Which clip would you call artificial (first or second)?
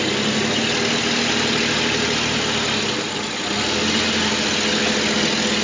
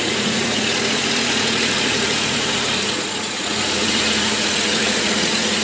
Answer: second